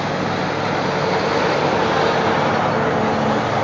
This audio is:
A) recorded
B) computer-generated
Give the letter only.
A